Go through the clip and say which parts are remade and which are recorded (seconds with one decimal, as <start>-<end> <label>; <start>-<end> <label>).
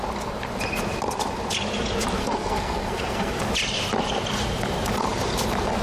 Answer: 0.0-2.2 recorded; 2.2-3.4 remade; 3.4-5.8 recorded